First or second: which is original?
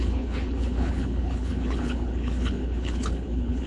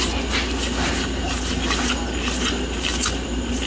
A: second